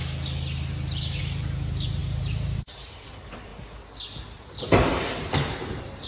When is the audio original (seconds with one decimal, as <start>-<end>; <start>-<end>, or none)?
0.0-1.2; 3.5-4.2